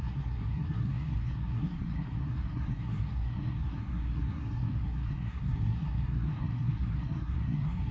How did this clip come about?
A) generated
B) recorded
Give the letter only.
A